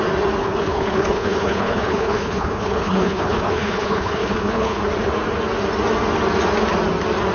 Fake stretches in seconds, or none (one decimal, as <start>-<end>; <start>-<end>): 0.4-4.8